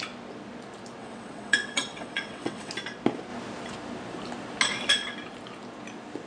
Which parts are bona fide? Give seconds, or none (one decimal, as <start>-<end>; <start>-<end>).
0.0-1.0; 2.7-6.3